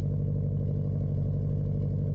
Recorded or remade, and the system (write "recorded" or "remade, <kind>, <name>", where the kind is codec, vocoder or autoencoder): recorded